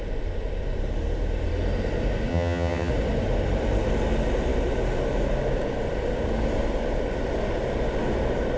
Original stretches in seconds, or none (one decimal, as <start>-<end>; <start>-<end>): 0.0-2.3; 2.9-8.6